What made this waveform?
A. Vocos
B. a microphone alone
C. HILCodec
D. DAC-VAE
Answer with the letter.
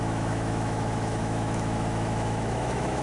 D